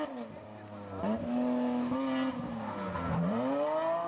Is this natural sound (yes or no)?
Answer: yes